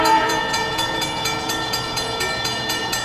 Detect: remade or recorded remade